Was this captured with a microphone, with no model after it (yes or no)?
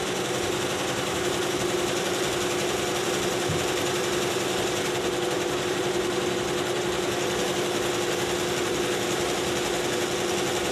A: yes